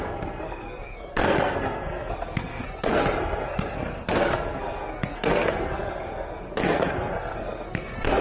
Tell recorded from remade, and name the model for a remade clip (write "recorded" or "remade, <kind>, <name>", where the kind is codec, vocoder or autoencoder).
remade, codec, SNAC